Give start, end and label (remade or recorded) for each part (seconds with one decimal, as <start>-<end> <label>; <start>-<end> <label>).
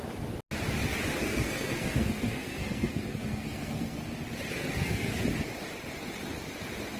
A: 0.0-1.2 recorded; 1.2-4.0 remade; 4.0-4.6 recorded; 4.6-5.2 remade; 5.2-7.0 recorded